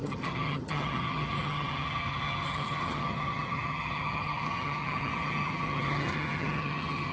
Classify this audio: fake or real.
fake